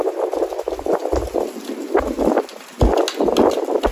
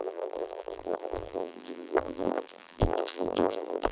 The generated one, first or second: second